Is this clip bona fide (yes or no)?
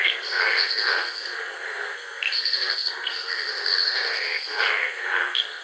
no